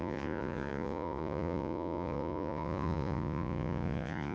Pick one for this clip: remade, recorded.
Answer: remade